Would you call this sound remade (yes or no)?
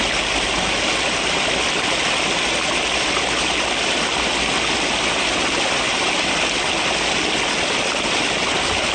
no